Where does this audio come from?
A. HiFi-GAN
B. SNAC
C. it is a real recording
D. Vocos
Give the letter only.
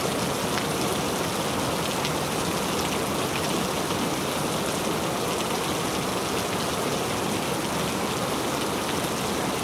C